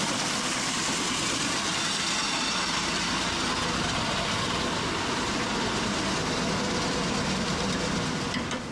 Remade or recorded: recorded